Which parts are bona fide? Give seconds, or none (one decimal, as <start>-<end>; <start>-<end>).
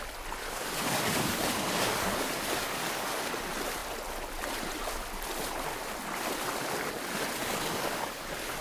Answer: 0.0-0.4; 3.2-7.4